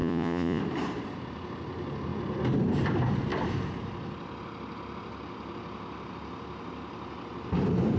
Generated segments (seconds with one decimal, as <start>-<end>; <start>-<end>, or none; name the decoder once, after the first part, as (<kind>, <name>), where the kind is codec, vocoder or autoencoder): 0.0-0.6 (vocoder, Vocos)